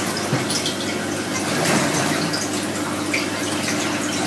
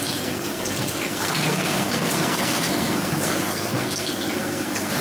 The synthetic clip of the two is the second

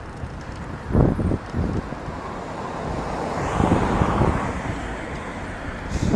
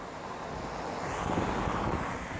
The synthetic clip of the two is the first